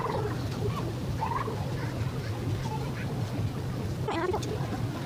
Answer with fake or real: real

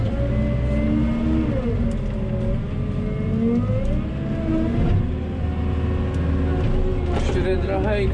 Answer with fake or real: real